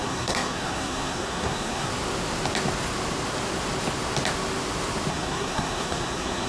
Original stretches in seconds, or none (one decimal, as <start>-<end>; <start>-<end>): 1.9-5.1